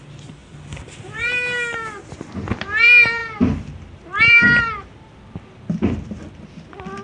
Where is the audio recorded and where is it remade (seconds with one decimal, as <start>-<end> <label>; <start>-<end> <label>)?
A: 0.0-7.0 recorded